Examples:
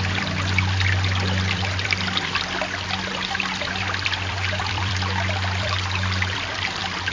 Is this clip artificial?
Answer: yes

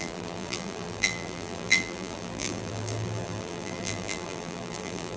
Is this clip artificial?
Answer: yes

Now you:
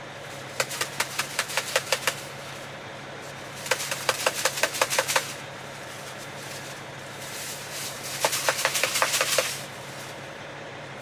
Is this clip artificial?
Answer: yes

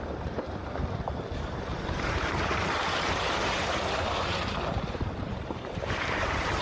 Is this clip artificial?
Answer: yes